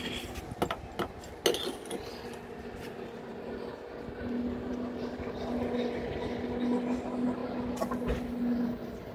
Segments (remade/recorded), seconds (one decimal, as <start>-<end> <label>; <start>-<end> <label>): 0.0-9.1 recorded